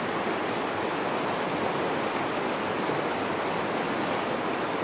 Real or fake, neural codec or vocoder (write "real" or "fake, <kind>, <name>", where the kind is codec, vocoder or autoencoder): real